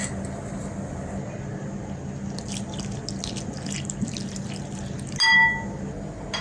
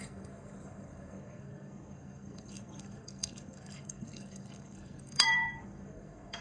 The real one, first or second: first